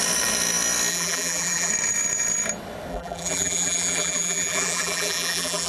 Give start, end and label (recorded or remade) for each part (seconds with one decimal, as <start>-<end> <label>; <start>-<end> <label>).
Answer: 0.0-0.9 recorded; 0.9-1.7 remade; 1.7-2.9 recorded; 2.9-5.7 remade